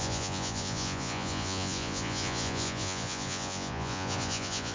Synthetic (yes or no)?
yes